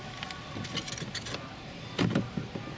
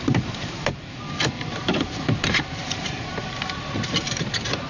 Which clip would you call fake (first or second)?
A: second